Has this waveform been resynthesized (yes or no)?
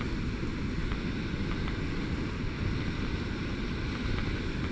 no